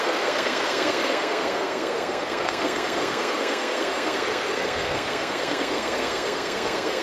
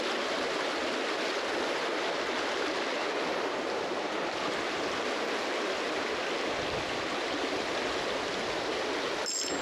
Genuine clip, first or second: second